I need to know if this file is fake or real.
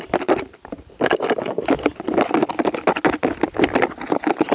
real